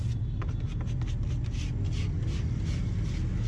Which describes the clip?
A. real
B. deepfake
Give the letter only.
A